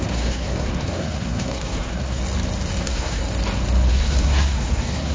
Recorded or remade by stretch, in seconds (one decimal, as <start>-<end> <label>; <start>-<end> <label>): 0.0-2.2 remade; 2.2-2.8 recorded; 2.8-3.2 remade; 3.2-3.9 recorded; 3.9-5.1 remade